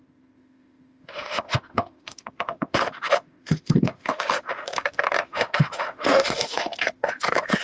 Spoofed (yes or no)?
yes